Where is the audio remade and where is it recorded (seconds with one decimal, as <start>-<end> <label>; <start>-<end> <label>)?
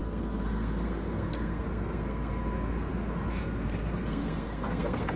0.0-5.2 remade